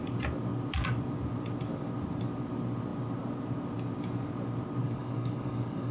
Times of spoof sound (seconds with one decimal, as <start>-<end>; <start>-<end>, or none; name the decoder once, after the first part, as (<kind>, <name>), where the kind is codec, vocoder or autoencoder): 4.8-5.9 (codec, DAC)